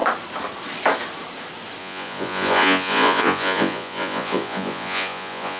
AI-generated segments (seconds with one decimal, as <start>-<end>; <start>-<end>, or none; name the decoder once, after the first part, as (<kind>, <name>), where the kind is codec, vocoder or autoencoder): 1.8-5.6 (vocoder, Vocos)